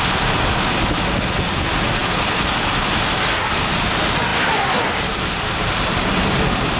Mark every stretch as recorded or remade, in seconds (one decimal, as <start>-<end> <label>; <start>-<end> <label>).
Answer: 0.0-6.8 recorded